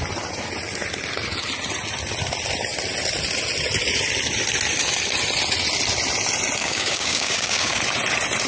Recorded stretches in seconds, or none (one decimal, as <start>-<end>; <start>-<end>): 0.0-6.6; 7.8-8.5

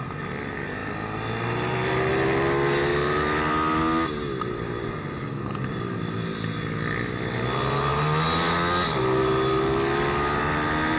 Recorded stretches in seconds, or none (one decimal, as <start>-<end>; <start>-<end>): 0.0-11.0

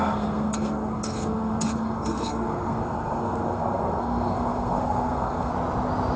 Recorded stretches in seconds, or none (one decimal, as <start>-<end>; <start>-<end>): 5.5-6.2